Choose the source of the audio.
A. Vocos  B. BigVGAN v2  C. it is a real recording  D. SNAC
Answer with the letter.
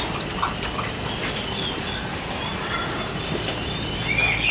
C